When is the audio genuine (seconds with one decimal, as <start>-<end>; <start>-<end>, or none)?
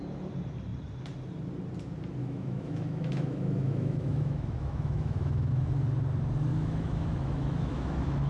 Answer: 0.0-2.2; 5.5-6.5